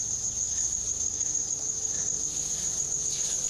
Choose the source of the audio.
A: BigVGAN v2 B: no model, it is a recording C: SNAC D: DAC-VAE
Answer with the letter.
A